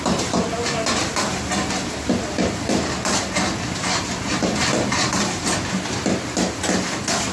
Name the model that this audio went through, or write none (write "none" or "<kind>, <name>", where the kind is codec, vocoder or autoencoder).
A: none